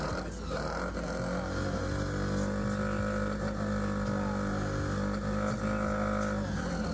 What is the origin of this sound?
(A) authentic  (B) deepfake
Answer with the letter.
A